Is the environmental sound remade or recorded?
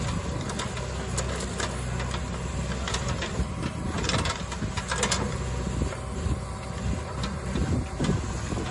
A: recorded